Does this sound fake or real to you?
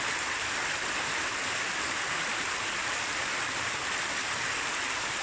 real